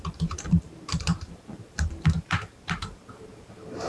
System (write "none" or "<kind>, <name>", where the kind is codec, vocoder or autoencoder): vocoder, BigVGAN v2